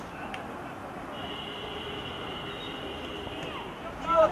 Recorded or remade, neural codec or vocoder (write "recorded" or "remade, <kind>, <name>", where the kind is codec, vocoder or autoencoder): recorded